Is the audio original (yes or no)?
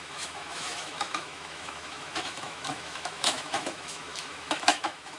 no